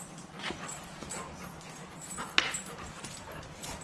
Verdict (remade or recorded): remade